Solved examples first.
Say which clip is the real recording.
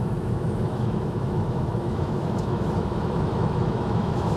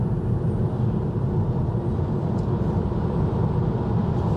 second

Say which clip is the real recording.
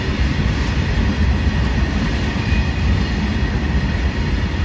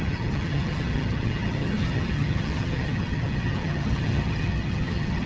first